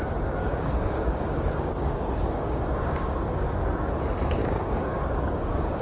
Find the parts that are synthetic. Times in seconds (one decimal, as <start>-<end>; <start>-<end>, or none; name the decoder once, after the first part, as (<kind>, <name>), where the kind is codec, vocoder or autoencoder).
0.4-3.9 (codec, DAC); 4.4-5.8